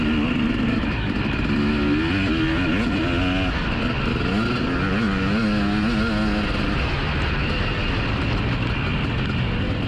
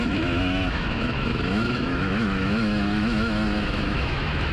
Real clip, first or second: first